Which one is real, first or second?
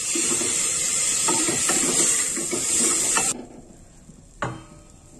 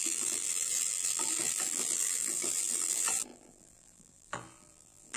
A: first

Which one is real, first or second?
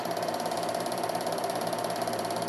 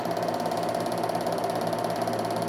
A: second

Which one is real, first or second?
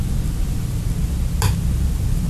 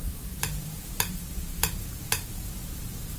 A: first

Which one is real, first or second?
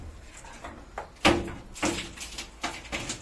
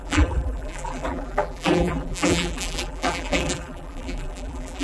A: first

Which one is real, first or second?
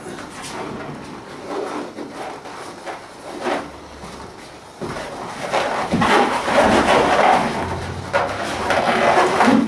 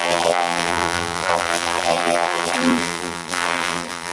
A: first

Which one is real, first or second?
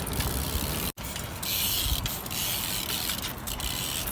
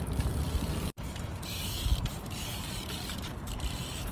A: first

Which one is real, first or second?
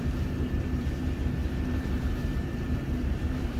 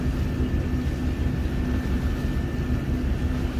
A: second